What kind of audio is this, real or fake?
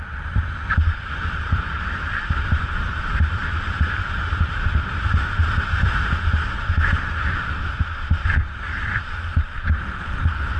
fake